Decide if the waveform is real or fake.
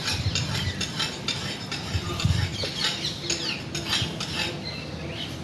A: real